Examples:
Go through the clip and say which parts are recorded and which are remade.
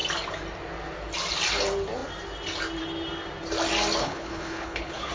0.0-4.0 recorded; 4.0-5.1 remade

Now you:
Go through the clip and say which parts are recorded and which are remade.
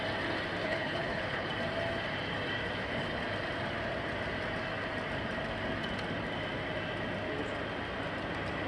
0.0-0.6 recorded; 0.6-1.5 remade; 1.5-8.7 recorded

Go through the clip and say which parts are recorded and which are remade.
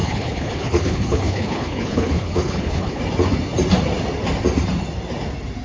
0.0-3.0 remade; 3.0-5.6 recorded